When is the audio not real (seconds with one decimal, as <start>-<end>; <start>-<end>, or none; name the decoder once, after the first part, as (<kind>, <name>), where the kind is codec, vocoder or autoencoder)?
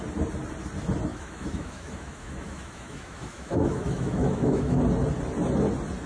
1.1-4.8 (autoencoder, DAC-VAE)